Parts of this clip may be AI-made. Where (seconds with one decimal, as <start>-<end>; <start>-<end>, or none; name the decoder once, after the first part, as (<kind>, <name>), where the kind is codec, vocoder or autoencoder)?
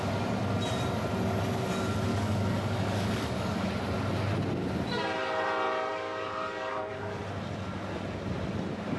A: 2.1-3.7 (codec, DAC); 5.9-7.2